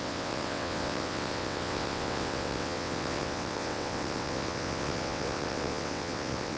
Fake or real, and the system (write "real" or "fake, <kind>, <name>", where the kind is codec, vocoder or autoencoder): fake, vocoder, WaveNeXt